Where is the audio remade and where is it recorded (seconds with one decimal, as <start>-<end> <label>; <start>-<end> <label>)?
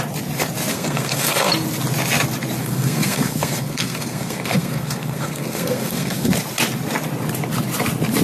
0.0-0.7 recorded; 0.7-1.5 remade; 1.5-2.6 recorded; 2.6-6.3 remade; 6.3-8.2 recorded